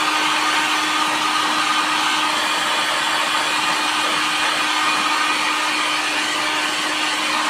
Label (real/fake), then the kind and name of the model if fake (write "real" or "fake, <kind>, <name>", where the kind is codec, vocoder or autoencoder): real